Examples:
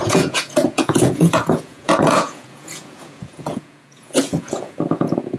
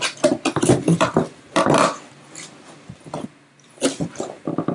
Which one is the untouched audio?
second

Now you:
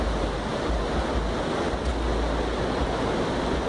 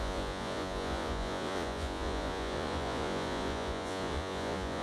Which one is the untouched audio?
first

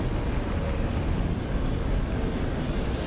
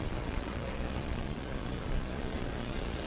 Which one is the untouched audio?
first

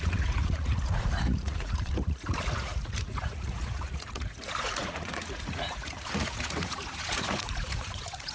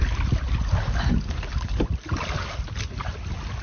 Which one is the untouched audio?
second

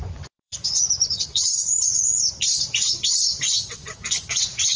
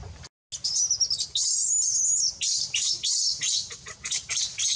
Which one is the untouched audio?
second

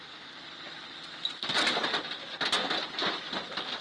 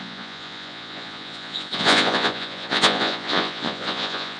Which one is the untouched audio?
first